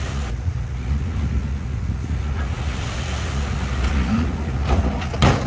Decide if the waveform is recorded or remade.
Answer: remade